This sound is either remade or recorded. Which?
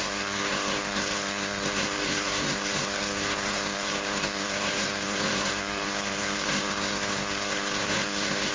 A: remade